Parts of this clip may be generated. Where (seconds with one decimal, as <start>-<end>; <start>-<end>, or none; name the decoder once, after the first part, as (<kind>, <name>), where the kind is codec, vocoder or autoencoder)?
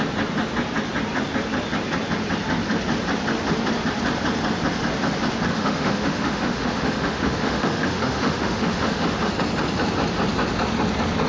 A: 5.5-9.3 (autoencoder, DAC-VAE)